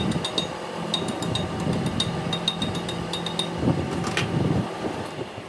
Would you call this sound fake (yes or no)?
no